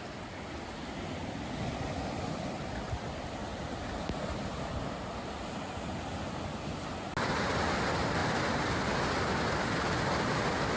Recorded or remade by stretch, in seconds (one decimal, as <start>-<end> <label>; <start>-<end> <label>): 0.0-10.8 recorded